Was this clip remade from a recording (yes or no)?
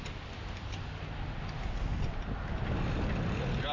no